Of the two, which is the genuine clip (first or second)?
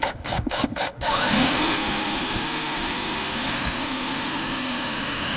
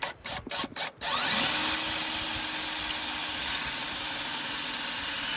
second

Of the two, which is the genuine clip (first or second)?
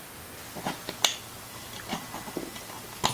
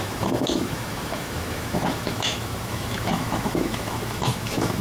first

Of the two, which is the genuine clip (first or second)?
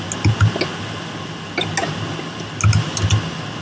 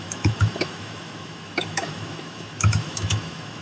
first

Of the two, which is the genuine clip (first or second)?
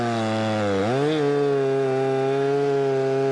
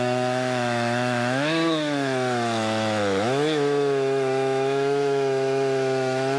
first